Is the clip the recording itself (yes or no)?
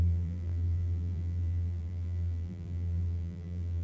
no